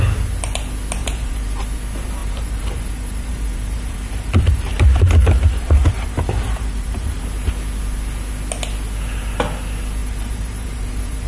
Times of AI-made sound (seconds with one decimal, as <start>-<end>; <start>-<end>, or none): 1.0-1.6; 2.2-7.2; 10.0-11.3